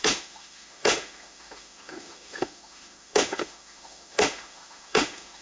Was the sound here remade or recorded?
remade